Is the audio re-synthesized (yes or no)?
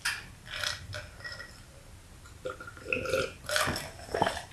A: no